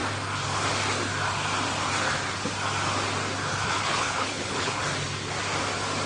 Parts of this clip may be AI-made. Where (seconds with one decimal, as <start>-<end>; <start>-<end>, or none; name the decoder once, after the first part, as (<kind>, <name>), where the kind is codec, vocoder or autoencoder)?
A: 3.5-4.8 (codec, HILCodec)